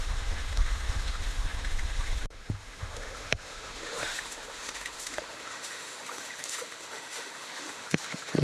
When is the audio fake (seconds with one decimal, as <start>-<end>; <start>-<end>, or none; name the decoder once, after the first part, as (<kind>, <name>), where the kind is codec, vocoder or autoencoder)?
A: 0.0-8.4 (autoencoder, DAC-VAE)